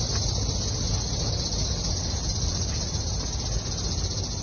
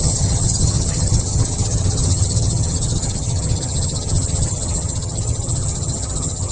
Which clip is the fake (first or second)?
second